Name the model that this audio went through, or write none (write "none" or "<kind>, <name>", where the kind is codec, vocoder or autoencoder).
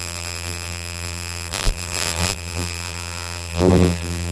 vocoder, BigVGAN v2